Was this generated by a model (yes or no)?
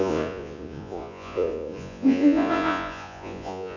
yes